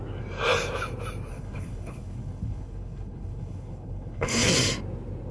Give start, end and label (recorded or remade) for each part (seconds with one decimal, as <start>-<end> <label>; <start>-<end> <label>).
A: 0.0-1.3 recorded; 1.3-4.5 remade; 4.5-5.3 recorded